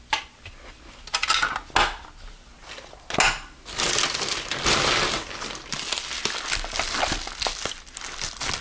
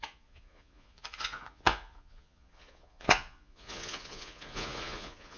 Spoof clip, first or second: second